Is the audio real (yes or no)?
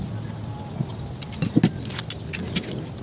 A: yes